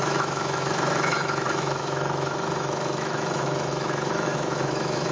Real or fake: fake